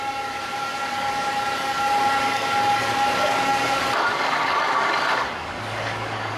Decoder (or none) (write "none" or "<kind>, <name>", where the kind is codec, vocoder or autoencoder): codec, DAC